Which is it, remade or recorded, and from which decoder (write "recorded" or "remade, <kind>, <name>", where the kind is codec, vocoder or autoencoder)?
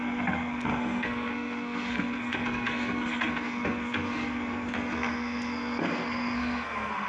remade, codec, SNAC